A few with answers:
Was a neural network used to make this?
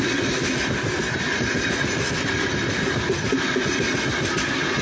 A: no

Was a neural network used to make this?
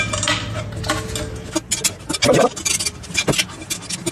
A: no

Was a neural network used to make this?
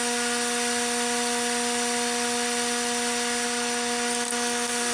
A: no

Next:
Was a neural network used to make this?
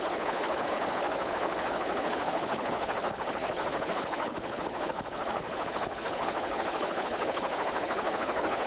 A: yes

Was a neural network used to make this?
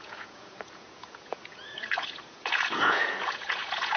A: yes